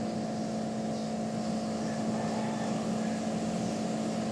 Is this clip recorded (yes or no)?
yes